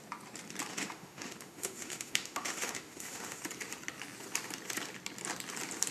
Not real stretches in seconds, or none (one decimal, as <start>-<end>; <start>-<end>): 0.7-3.4